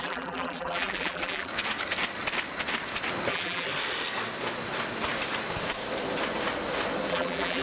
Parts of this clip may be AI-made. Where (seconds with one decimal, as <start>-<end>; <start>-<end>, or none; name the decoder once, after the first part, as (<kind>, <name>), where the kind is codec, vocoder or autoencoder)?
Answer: 0.0-1.5 (vocoder, BigVGAN v2); 3.3-3.7; 7.1-7.6